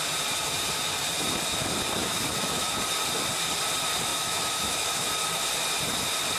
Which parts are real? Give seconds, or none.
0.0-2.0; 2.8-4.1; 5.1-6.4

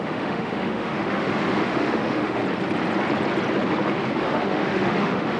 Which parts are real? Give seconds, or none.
2.4-4.2

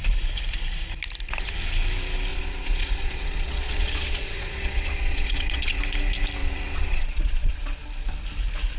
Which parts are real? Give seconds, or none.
0.0-2.3; 5.8-6.4; 7.8-8.8

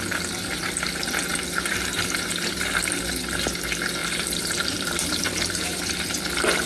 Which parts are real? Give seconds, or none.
0.0-1.3; 3.1-4.0; 5.8-6.7

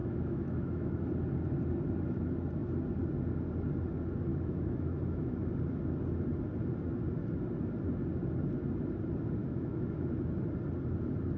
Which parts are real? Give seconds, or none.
1.1-4.3; 5.5-9.4; 10.1-11.4

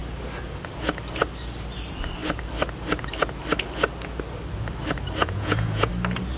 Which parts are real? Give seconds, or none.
0.0-5.2; 5.9-6.4

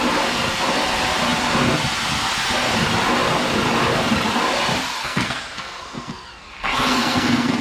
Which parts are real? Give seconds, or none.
0.0-5.0

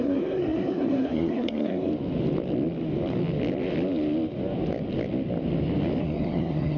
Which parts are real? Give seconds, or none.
1.9-6.0